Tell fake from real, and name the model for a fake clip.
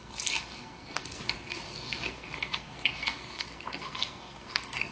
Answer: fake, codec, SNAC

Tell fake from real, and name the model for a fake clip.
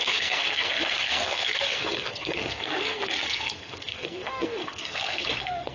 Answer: fake, codec, SNAC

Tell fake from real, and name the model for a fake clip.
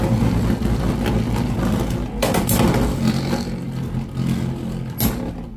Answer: real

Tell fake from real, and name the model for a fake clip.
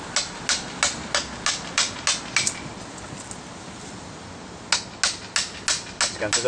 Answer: real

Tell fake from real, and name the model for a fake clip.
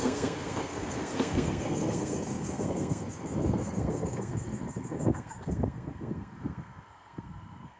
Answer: fake, codec, SNAC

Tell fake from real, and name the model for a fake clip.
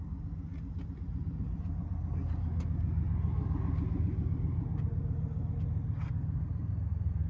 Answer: real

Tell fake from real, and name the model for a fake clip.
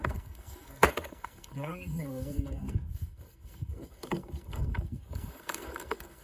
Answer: fake, codec, SNAC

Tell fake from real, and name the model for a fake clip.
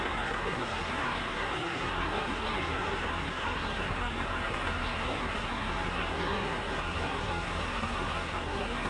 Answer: fake, codec, SNAC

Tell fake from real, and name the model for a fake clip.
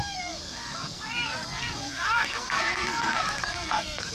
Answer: fake, codec, SNAC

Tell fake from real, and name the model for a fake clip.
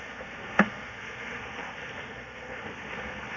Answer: fake, codec, SNAC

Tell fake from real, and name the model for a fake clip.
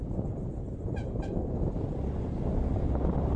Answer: real